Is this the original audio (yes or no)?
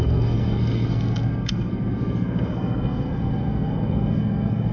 no